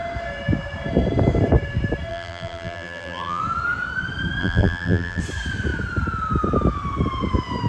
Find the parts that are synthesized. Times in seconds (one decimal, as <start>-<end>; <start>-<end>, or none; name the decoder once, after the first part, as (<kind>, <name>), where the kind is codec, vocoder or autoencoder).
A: 2.1-3.4 (vocoder, BigVGAN v2); 4.4-5.2